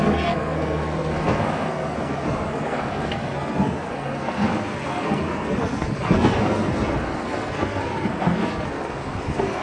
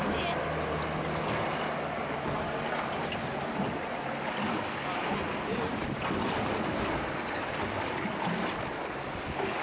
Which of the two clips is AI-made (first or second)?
first